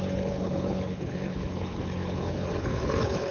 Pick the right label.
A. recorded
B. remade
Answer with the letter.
B